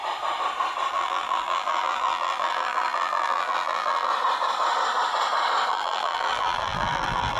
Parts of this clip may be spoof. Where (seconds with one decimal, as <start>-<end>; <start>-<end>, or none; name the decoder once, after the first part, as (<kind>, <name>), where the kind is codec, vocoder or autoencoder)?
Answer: 0.9-4.1 (vocoder, BigVGAN v2); 5.7-7.4